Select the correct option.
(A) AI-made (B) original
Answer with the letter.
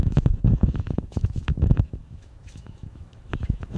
A